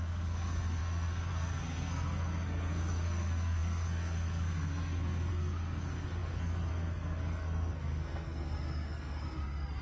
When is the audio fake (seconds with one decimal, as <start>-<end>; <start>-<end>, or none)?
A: 0.0-9.8